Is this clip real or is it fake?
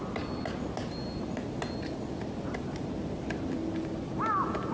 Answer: real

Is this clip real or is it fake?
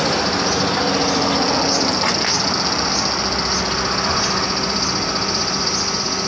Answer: real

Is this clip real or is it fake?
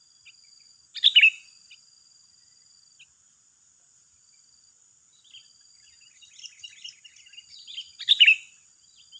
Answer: real